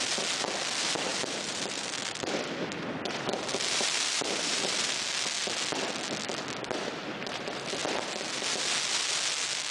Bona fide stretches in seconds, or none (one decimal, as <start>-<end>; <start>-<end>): 0.0-1.1; 4.9-9.7

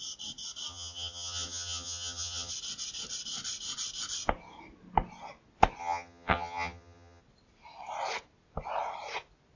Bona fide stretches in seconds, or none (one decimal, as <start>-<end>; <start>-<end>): 0.0-0.7; 2.5-5.8; 7.2-9.6

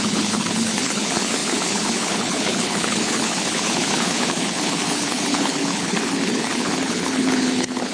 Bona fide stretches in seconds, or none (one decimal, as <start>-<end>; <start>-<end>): none

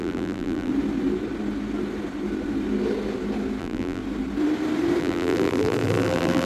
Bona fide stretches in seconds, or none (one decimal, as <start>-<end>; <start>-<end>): 0.7-3.6; 4.0-5.0